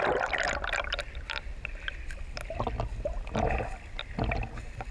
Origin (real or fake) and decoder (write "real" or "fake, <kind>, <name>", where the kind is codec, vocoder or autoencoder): real